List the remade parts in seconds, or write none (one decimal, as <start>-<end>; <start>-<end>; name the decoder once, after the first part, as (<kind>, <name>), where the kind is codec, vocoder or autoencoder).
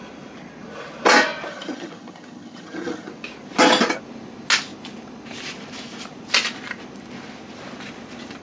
1.5-3.1 (vocoder, HiFi-GAN)